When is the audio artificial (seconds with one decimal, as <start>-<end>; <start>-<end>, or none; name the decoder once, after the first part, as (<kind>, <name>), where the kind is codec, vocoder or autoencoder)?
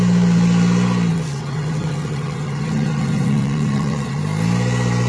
1.1-4.2 (vocoder, WaveNeXt)